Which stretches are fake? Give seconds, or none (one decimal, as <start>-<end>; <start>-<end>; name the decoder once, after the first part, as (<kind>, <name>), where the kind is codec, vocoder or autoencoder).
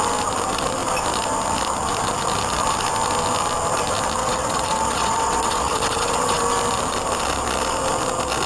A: 4.2-6.4 (vocoder, WaveNeXt)